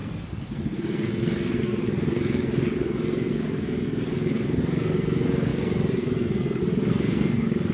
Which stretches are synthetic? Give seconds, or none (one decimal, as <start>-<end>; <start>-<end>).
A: 0.0-7.7